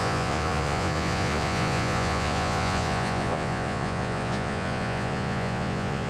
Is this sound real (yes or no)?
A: no